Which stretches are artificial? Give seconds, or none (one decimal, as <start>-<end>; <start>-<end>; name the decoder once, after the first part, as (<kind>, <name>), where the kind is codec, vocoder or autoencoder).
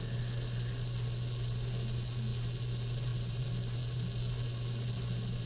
none